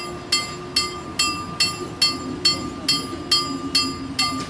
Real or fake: real